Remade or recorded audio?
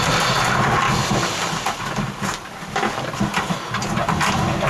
recorded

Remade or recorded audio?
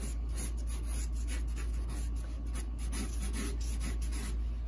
recorded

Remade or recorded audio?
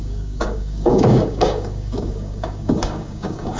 remade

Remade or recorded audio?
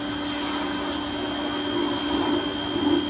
recorded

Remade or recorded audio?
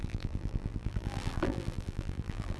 remade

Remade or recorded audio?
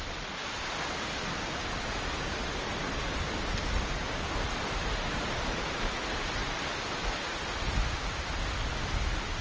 recorded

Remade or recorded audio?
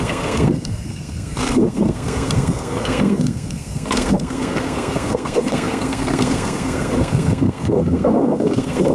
remade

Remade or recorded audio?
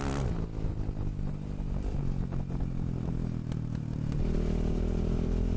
recorded